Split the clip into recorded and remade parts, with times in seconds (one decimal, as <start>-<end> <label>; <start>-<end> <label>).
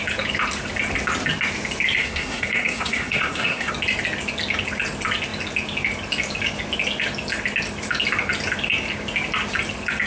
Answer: 0.0-2.0 recorded; 2.0-3.7 remade; 3.7-10.1 recorded